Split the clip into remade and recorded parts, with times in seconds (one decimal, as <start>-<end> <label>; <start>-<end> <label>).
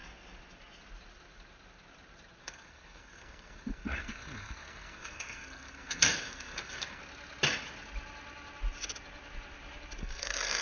0.0-2.4 recorded; 2.4-7.0 remade; 7.0-10.0 recorded; 10.0-10.6 remade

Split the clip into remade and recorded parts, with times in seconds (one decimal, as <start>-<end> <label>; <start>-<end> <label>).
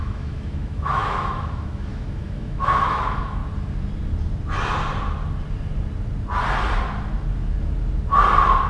0.0-3.4 remade; 3.4-8.7 recorded